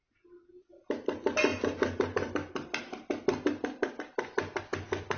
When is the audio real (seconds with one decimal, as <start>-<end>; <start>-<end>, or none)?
0.0-5.2